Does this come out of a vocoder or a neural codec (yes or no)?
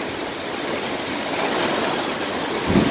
no